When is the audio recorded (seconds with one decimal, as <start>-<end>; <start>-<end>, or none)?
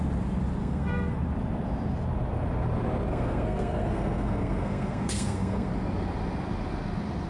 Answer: 0.0-0.6; 1.2-3.1; 5.7-7.3